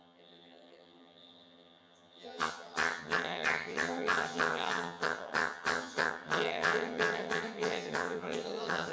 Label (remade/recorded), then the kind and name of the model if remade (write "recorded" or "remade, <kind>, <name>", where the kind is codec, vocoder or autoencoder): remade, vocoder, HiFi-GAN